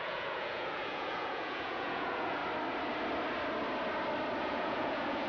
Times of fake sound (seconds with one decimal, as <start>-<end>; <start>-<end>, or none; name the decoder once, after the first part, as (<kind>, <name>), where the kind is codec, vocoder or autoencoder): 0.0-2.4 (vocoder, Vocos); 4.4-5.3